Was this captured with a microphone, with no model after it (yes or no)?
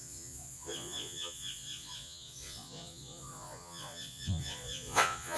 no